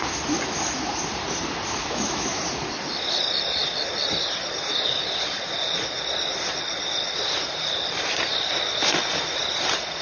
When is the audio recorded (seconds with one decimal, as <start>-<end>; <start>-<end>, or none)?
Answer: 0.0-1.8; 2.4-10.0

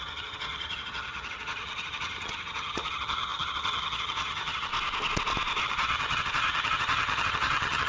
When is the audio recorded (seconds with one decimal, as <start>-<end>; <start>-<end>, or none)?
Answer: 4.7-5.6

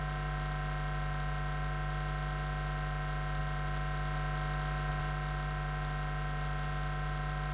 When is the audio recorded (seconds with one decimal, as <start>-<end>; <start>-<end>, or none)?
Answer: 0.0-7.5